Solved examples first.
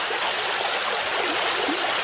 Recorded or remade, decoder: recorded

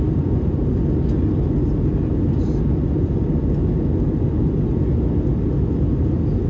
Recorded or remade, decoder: recorded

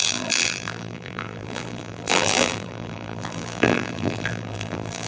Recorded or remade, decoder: remade, vocoder, BigVGAN v2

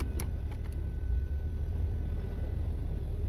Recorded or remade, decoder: remade, vocoder, BigVGAN v2